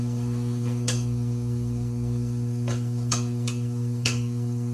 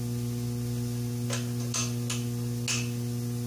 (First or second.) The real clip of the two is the second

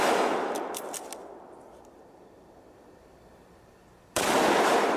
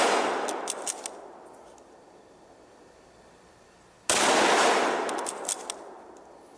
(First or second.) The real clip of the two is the second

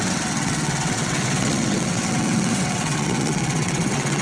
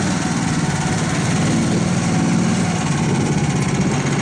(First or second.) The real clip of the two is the second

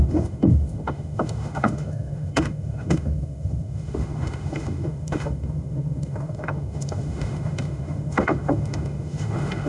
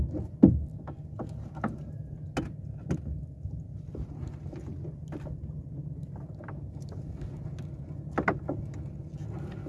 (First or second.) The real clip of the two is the second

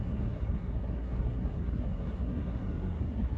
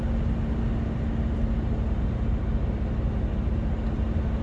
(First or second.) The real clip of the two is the second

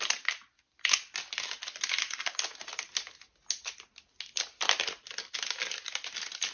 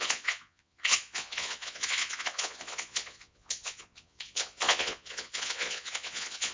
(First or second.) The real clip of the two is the first